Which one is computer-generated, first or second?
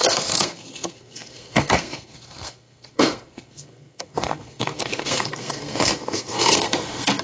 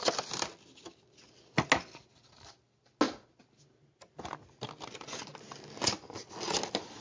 first